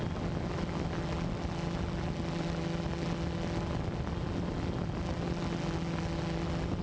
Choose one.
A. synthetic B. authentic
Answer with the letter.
B